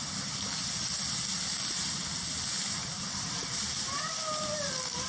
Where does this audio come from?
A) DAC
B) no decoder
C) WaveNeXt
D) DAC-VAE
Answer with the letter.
B